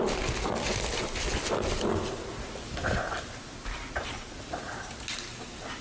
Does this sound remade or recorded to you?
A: recorded